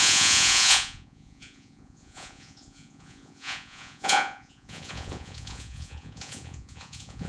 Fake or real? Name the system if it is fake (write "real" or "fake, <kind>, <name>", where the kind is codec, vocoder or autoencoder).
fake, vocoder, Vocos